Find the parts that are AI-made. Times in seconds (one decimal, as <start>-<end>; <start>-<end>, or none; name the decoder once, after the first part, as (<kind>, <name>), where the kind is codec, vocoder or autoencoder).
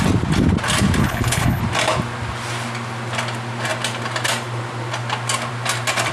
1.0-1.6 (codec, HILCodec)